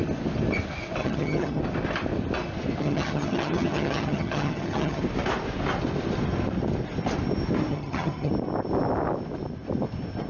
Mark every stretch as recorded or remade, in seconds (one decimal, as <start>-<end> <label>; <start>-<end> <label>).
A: 0.0-1.0 recorded; 1.0-1.6 remade; 1.6-2.8 recorded; 2.8-5.0 remade; 5.0-7.7 recorded; 7.7-8.3 remade; 8.3-10.3 recorded